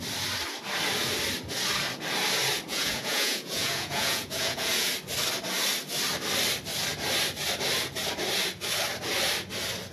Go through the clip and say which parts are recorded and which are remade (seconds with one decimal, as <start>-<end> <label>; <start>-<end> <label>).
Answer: 0.0-2.7 recorded; 2.7-4.9 remade; 4.9-9.9 recorded